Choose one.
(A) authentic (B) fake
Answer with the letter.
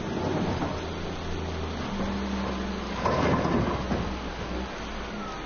A